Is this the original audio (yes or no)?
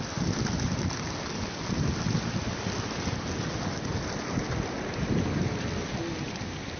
yes